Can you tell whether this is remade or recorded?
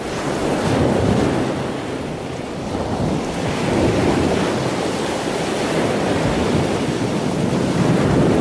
recorded